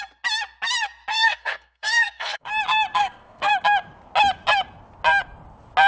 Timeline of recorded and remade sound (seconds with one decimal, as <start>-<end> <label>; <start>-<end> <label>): 0.0-1.1 recorded; 1.1-2.5 remade; 2.5-3.0 recorded; 3.0-3.5 remade; 3.5-5.9 recorded